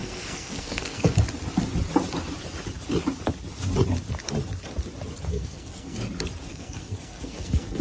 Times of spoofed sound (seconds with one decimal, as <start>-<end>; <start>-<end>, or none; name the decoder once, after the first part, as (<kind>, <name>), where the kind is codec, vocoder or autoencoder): 0.0-1.1 (codec, SNAC); 5.3-6.0; 6.5-7.8